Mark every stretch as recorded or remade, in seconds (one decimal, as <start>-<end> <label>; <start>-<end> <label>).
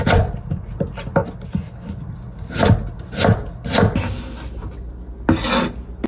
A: 0.0-6.1 recorded